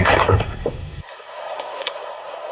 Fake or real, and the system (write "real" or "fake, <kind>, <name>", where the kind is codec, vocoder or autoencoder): fake, codec, SNAC